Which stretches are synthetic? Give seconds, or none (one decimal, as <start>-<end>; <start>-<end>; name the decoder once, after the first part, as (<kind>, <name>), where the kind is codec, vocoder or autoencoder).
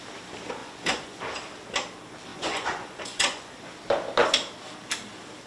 0.6-1.2 (vocoder, Vocos); 2.3-3.5